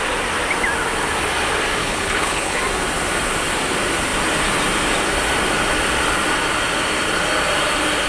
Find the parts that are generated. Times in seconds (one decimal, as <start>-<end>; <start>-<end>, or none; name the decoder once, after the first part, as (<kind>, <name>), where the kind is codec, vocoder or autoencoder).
1.8-2.6 (codec, HILCodec)